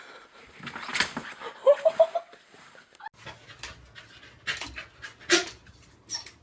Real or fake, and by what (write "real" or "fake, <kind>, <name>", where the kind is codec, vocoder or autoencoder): real